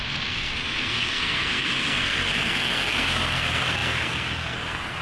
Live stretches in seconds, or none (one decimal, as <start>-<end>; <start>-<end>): none